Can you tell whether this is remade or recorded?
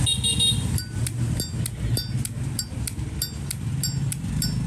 recorded